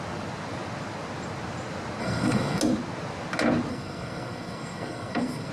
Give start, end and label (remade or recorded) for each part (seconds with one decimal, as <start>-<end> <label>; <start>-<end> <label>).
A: 0.0-2.0 recorded; 2.0-2.6 remade; 2.6-3.7 recorded; 3.7-5.5 remade